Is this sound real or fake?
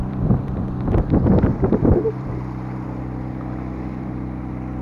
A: fake